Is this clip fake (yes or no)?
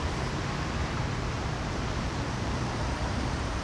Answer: yes